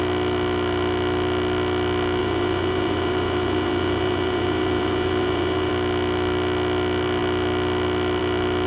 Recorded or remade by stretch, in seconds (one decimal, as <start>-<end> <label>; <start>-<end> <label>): 0.0-2.2 recorded; 2.2-5.7 remade; 5.7-8.7 recorded